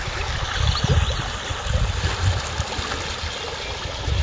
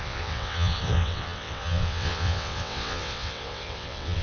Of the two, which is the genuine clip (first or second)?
first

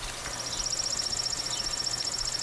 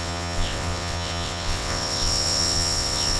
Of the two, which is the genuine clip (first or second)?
first